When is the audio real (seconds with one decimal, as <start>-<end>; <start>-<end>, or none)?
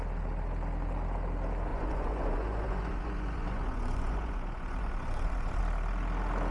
0.0-1.7; 5.6-6.5